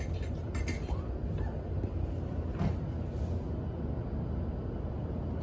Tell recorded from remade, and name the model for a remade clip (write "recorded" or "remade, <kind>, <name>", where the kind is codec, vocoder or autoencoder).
recorded